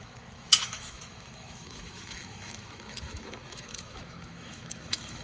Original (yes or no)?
no